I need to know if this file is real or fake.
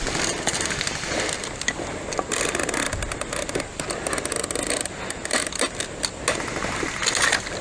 real